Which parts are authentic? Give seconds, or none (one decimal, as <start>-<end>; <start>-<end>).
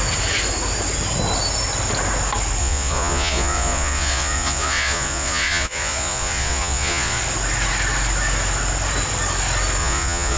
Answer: 0.0-2.6; 7.2-9.8